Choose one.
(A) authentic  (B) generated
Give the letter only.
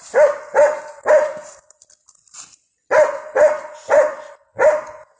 A